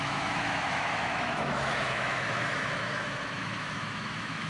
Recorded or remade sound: remade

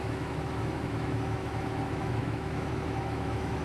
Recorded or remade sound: remade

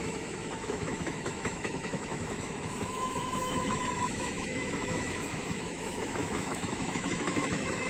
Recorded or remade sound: remade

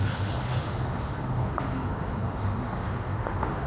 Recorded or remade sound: remade